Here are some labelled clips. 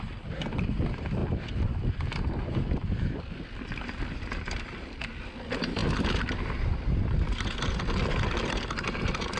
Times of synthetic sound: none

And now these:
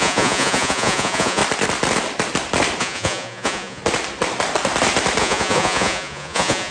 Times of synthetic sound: 0.0-1.4 (vocoder, Vocos); 2.8-3.8; 5.2-6.7

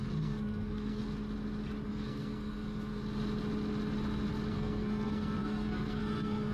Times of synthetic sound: 0.0-1.0 (codec, SNAC); 1.9-3.0; 4.5-6.5

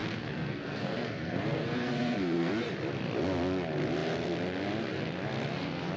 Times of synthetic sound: 0.0-2.5 (codec, SNAC)

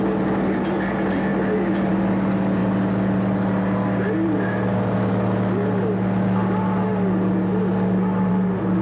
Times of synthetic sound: none

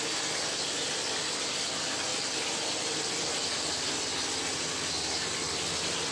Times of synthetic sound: none

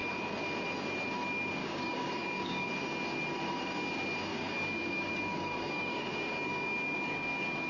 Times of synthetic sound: 1.6-2.7 (codec, DAC); 4.3-7.7